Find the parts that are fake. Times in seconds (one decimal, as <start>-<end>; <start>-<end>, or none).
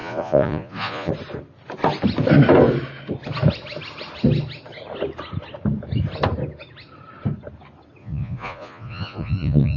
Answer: 0.0-1.1; 8.0-9.8